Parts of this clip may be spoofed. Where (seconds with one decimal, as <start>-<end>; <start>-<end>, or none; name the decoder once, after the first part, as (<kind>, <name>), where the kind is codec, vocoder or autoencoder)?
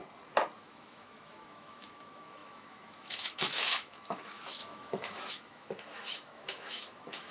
0.6-7.3 (autoencoder, DAC-VAE)